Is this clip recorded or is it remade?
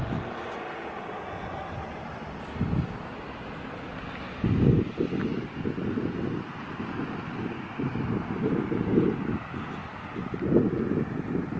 recorded